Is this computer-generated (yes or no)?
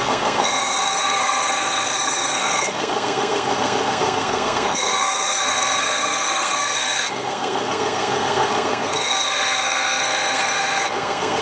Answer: yes